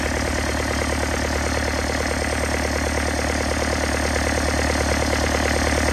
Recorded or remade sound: recorded